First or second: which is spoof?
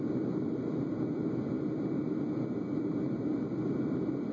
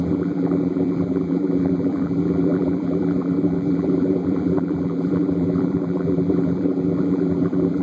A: second